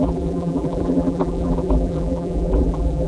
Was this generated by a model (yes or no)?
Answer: yes